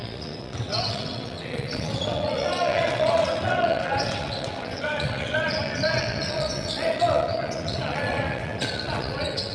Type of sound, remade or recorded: remade